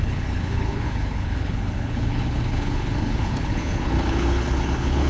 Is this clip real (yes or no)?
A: no